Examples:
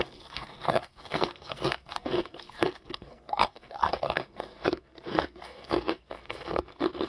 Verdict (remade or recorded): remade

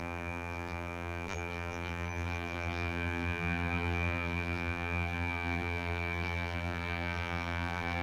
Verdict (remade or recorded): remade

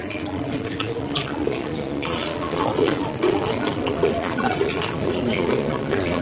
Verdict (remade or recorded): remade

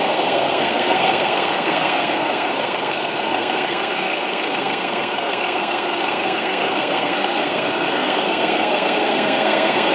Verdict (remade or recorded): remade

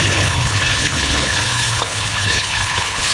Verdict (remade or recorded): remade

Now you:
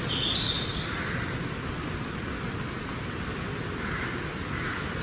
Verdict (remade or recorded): recorded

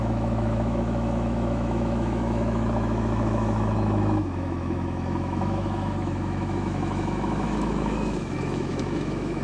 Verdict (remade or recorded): remade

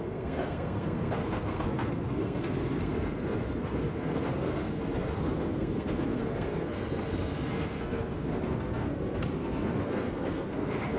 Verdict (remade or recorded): remade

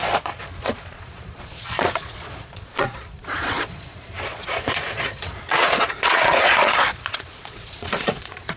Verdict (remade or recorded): remade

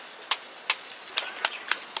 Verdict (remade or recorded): recorded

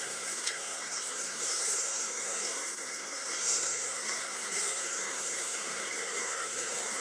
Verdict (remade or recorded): remade